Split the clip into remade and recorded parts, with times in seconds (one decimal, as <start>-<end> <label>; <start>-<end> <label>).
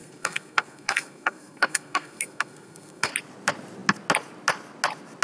0.0-3.1 remade; 3.1-5.2 recorded